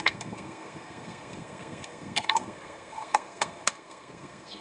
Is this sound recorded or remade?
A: remade